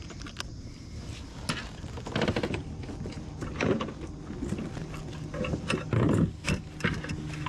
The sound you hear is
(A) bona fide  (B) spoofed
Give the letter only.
A